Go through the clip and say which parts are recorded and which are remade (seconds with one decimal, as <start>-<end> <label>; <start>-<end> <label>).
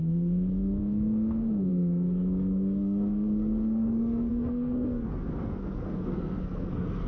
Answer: 0.0-7.1 remade